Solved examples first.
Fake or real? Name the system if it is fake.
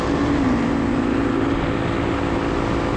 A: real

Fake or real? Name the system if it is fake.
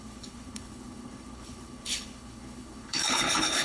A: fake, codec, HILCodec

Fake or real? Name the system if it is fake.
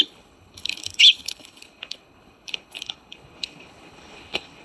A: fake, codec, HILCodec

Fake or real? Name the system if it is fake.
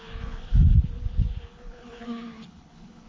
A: fake, codec, HILCodec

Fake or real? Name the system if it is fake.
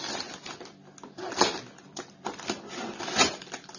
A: real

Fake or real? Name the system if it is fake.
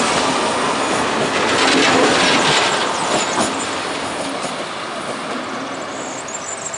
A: real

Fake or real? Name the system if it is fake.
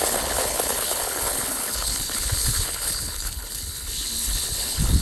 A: fake, codec, HILCodec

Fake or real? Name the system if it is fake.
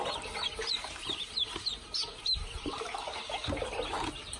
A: real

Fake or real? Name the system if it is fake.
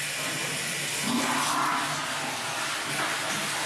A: real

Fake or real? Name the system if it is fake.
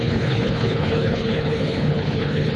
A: fake, codec, HILCodec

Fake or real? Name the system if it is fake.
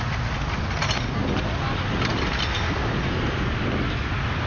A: real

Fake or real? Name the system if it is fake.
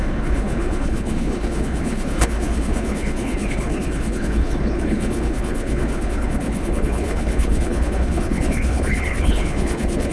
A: fake, codec, HILCodec